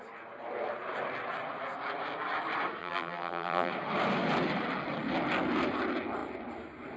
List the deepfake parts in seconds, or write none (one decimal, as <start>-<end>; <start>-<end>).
2.8-3.7